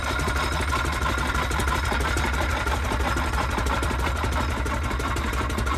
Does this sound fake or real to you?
real